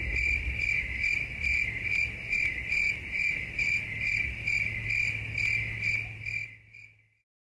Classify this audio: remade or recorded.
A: recorded